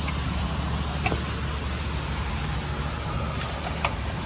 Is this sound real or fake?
real